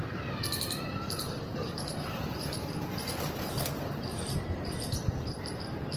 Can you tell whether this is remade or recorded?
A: remade